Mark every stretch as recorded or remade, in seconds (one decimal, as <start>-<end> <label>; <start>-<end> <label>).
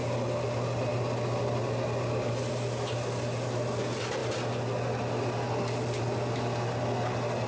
0.0-7.5 recorded